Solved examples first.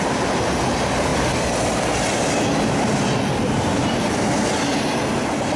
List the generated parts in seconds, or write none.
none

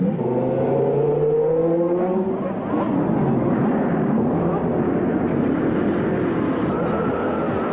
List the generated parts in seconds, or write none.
none

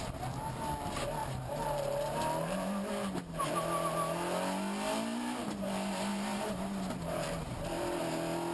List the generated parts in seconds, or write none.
1.2-2.9 (vocoder, BigVGAN v2); 6.1-7.5

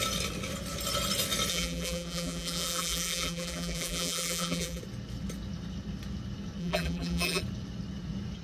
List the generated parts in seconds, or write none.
1.5-4.8 (vocoder, BigVGAN v2); 6.6-7.4